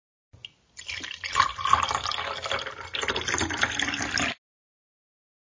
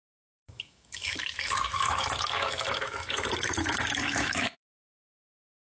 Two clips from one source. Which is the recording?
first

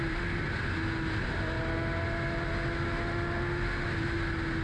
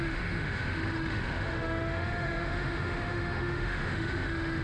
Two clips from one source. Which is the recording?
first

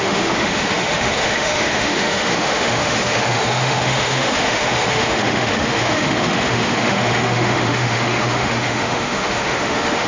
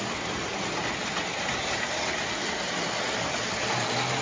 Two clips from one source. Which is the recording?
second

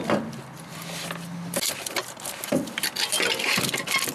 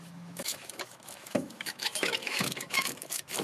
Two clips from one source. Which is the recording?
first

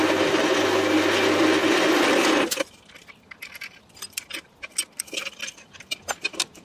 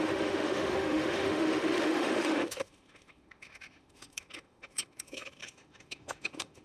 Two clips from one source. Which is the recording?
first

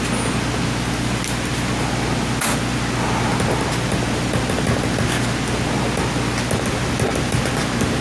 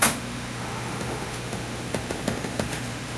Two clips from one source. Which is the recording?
first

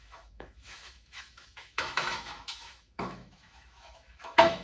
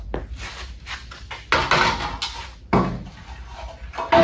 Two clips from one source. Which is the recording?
second